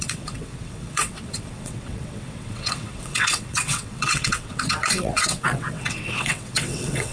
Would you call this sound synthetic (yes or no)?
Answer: yes